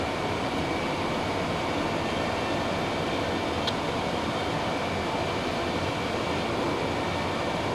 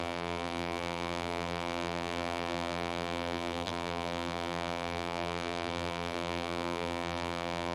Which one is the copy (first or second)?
second